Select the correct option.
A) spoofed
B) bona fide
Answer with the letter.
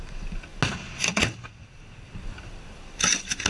B